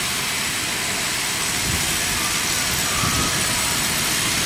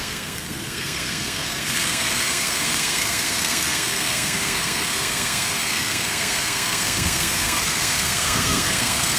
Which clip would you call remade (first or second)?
second